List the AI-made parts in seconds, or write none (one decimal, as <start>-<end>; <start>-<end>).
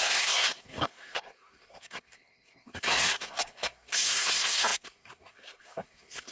0.0-6.3